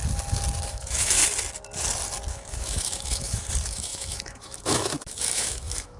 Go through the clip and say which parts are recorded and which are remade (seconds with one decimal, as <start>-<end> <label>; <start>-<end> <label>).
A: 0.0-0.7 recorded; 0.7-1.2 remade; 1.2-2.3 recorded; 2.3-6.0 remade

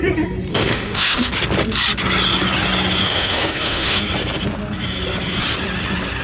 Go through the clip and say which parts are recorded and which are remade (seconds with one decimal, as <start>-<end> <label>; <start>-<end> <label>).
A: 0.0-0.5 recorded; 0.5-1.3 remade; 1.3-3.0 recorded; 3.0-4.0 remade; 4.0-6.2 recorded

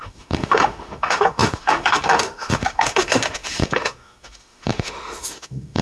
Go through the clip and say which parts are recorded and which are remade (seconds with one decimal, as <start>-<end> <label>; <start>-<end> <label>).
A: 0.0-5.8 remade

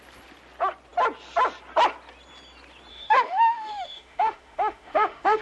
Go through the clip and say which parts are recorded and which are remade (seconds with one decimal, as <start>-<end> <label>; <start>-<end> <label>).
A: 0.0-2.9 recorded; 2.9-5.4 remade

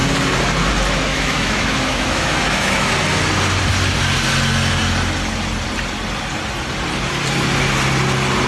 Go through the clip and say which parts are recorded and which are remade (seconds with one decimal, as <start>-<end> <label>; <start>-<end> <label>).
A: 0.0-1.1 recorded; 1.1-2.9 remade; 2.9-8.5 recorded

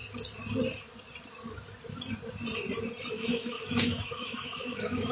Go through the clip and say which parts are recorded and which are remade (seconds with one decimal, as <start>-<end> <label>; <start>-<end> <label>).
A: 0.0-3.1 recorded; 3.1-5.1 remade